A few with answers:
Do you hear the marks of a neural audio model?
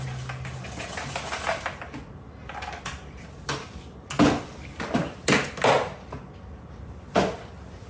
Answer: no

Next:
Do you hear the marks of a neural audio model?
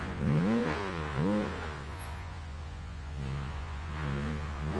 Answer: yes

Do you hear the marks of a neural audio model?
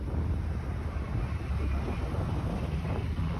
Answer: no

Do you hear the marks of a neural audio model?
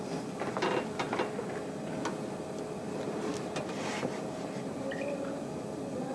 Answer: no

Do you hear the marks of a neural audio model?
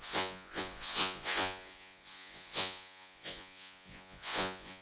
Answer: yes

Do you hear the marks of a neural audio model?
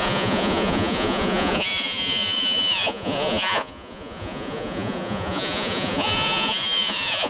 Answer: yes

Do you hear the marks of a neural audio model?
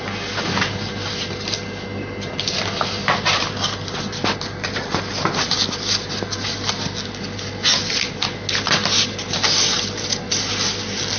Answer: no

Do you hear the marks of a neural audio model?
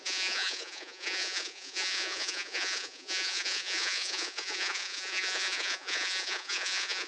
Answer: yes